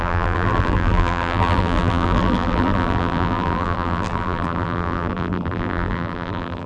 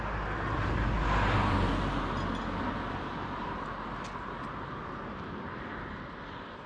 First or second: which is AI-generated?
first